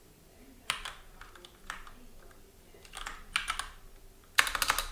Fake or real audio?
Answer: real